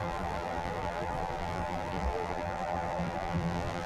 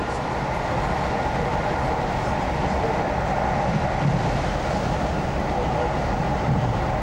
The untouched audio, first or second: second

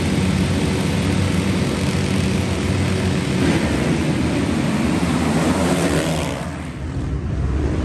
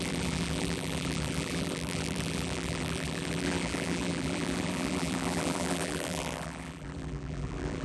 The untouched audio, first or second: first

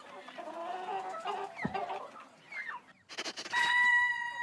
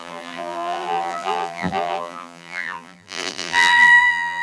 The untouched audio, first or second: first